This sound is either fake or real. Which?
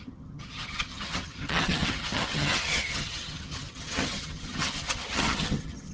fake